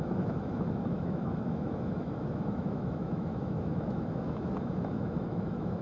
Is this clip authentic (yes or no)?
no